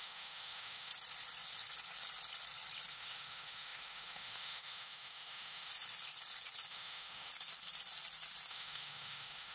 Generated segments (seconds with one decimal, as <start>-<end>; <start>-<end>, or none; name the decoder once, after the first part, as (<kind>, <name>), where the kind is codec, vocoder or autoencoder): 0.0-0.9 (autoencoder, DAC-VAE); 2.9-5.7; 6.7-7.3; 8.5-9.5